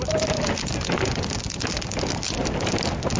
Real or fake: real